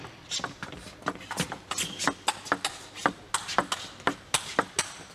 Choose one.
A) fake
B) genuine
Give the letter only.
B